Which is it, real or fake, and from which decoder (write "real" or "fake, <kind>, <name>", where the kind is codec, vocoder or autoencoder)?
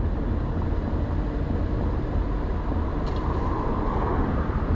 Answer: real